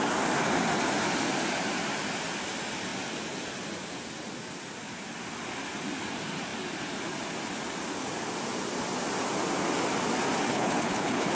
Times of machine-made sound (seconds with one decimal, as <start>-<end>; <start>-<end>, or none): 10.5-11.3